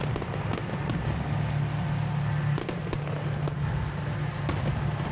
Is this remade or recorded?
recorded